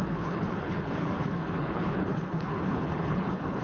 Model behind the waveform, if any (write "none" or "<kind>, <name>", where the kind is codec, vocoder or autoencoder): codec, HILCodec